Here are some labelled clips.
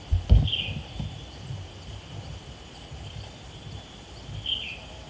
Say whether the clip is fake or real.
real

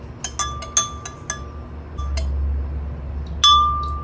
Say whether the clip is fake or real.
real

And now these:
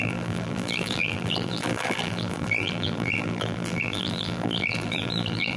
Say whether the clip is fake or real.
fake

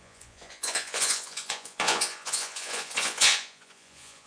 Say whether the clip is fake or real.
fake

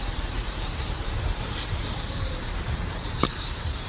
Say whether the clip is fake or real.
fake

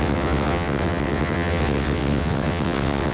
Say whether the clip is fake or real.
fake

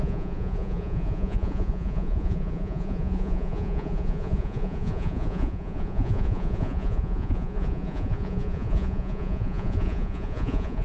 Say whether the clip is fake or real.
fake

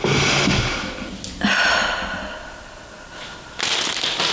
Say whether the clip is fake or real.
real